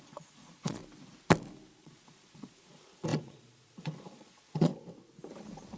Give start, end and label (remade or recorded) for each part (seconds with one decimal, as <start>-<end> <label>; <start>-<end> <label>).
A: 0.0-0.8 remade; 0.8-1.8 recorded; 1.8-4.7 remade; 4.7-5.8 recorded